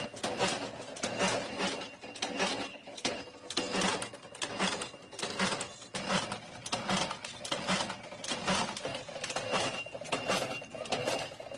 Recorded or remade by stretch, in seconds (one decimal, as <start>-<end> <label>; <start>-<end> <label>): 0.0-2.7 recorded; 2.7-3.2 remade; 3.2-11.6 recorded